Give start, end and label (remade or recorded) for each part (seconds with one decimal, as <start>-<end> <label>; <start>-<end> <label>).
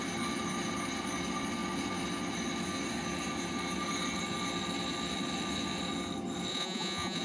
0.0-6.5 recorded; 6.5-7.2 remade